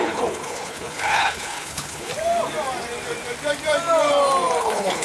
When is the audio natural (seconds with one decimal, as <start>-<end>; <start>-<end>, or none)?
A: 2.1-4.6